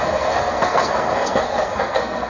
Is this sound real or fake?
fake